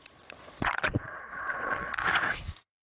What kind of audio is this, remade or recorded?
remade